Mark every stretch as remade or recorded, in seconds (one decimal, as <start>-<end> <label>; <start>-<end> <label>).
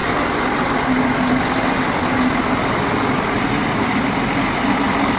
0.0-5.2 recorded